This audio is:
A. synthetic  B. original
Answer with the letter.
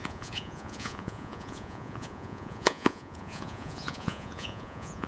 A